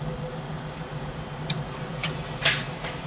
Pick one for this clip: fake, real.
fake